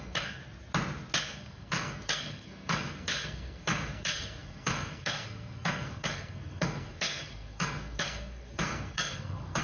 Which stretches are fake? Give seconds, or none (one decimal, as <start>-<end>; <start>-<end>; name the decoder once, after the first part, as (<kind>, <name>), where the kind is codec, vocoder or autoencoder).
0.0-0.4 (codec, SNAC); 1.2-9.6